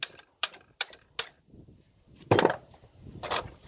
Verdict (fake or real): real